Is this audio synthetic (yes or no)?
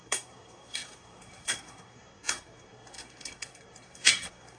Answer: yes